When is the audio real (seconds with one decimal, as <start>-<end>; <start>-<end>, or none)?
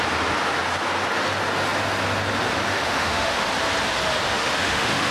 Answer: 0.0-2.7; 3.5-4.3